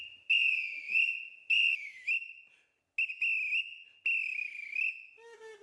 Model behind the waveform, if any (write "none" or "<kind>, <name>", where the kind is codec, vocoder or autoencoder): none